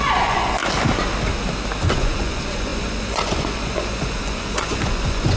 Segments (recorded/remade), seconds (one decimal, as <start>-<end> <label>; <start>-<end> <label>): 0.0-0.6 remade; 0.6-1.8 recorded; 1.8-5.4 remade